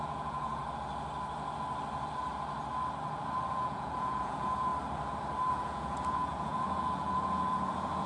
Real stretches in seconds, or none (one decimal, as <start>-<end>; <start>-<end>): 0.6-3.5; 4.7-5.5